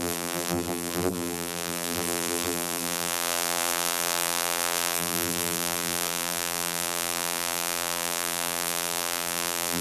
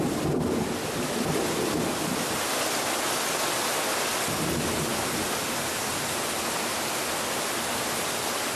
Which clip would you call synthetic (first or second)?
first